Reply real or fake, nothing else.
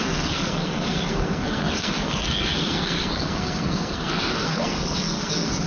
fake